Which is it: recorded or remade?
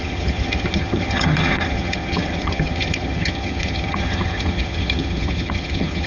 remade